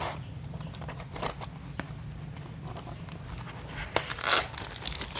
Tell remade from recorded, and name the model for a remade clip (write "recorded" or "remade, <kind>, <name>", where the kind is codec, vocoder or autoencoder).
recorded